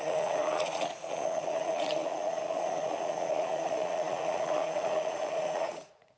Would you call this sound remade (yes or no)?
yes